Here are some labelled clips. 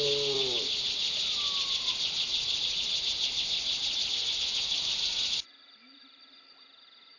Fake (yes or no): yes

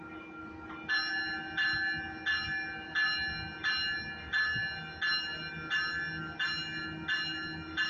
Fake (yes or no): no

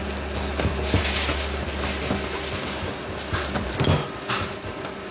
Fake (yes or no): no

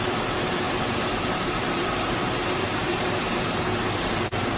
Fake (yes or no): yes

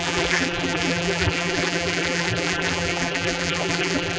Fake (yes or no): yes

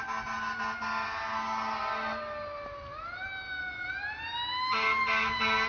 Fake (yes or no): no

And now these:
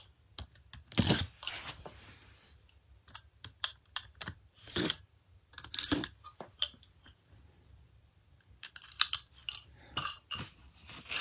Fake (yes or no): yes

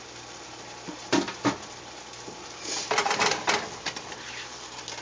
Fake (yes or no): no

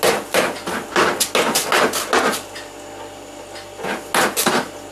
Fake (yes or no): no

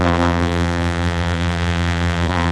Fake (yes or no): yes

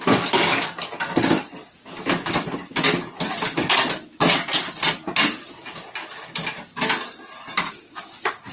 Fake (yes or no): no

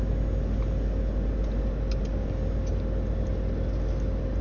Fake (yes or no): no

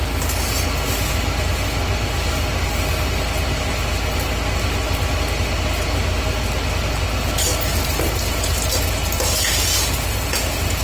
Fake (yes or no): no